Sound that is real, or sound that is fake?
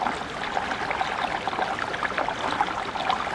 real